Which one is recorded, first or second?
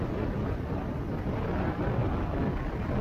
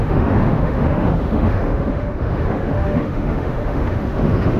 first